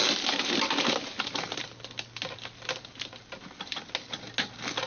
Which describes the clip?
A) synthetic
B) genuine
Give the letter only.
B